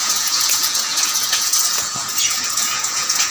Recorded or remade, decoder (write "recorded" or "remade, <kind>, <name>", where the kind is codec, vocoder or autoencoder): remade, vocoder, Vocos